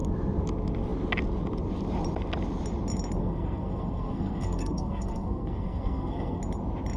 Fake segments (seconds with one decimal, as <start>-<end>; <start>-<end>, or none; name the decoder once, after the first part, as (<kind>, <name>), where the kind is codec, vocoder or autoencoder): 3.2-6.4 (codec, SNAC)